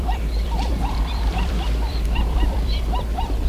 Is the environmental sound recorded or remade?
remade